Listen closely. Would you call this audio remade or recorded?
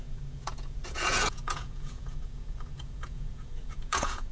remade